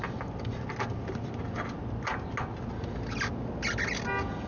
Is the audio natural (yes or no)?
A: yes